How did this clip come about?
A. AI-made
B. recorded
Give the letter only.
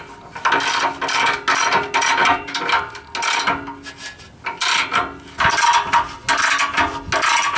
B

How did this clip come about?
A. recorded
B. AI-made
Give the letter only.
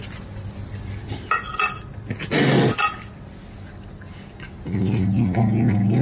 A